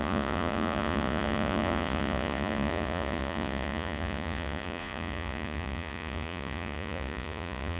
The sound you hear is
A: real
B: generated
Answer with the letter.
B